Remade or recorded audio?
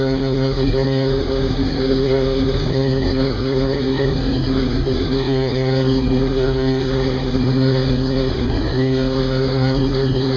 remade